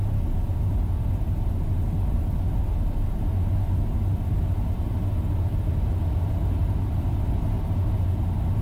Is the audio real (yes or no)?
yes